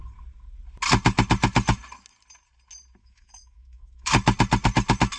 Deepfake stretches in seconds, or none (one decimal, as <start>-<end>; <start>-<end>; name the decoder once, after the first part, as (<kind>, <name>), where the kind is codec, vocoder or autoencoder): 3.0-4.1 (autoencoder, DAC-VAE)